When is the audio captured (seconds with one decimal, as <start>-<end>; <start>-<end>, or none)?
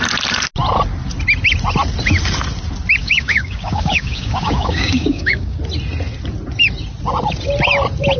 0.0-3.0; 5.6-8.2